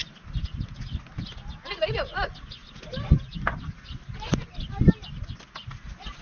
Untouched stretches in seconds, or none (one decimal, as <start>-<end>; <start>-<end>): 0.0-6.2

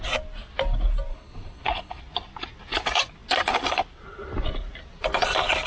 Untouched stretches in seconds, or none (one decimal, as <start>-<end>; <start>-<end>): 0.0-1.1; 2.0-5.7